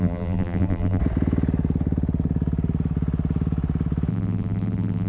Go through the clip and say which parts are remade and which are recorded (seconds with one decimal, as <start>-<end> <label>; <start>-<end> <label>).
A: 0.0-1.0 remade; 1.0-4.1 recorded; 4.1-5.1 remade